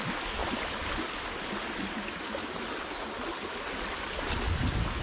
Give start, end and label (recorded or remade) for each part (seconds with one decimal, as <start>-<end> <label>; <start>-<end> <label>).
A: 0.0-0.4 recorded; 0.4-1.5 remade; 1.5-5.0 recorded